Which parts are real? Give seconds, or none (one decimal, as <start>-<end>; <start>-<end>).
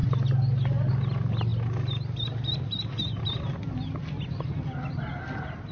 0.0-5.7